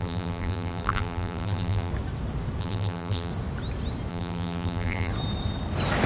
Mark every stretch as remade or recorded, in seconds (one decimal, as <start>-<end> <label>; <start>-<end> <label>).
0.0-1.9 remade; 1.9-2.6 recorded; 2.6-3.3 remade; 3.3-4.1 recorded; 4.1-5.1 remade; 5.1-6.1 recorded